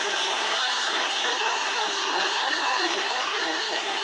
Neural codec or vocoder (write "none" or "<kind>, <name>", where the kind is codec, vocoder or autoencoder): codec, SNAC